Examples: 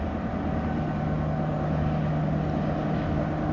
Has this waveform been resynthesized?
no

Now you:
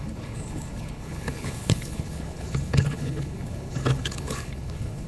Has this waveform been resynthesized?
yes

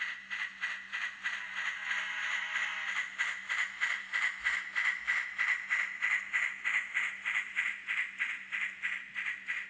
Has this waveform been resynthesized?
no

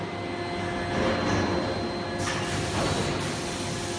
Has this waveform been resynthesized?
no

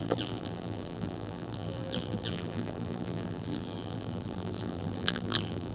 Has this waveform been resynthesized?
yes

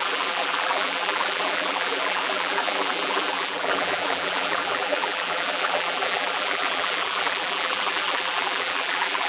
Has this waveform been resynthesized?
yes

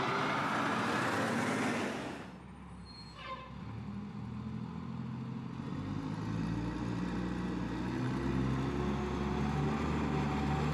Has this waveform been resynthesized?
no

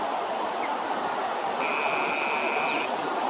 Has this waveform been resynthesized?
no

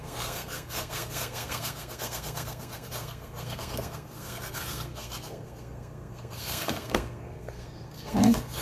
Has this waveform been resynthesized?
yes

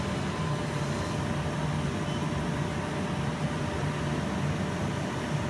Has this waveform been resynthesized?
no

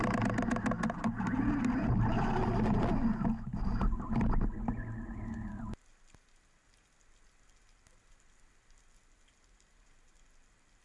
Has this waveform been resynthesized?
no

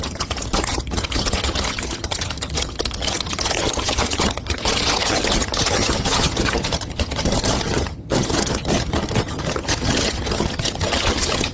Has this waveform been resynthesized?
yes